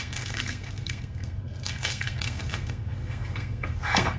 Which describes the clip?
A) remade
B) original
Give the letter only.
A